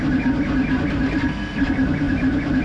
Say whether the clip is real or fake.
real